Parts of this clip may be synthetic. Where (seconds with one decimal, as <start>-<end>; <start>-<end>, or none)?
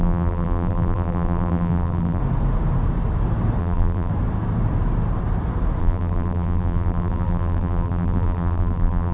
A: 0.0-2.2; 3.6-4.1; 5.8-9.1